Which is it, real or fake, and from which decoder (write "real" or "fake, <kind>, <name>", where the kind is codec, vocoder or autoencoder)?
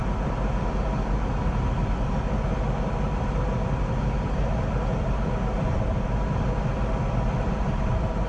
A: real